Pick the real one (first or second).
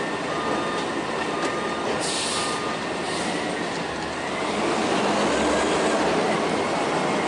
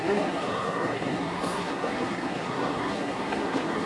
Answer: first